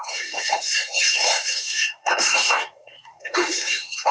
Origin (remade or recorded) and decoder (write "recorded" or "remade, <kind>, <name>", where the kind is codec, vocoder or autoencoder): remade, codec, SNAC